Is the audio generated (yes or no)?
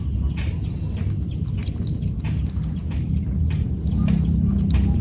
no